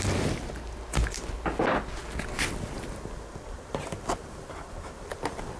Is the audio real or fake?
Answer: real